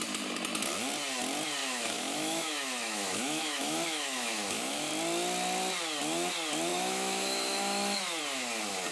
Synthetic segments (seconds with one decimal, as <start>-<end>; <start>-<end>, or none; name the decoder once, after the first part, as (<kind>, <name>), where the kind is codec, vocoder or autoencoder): 1.6-4.9 (autoencoder, DAC-VAE); 6.7-8.2